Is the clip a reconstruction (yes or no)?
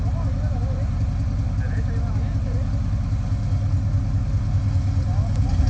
no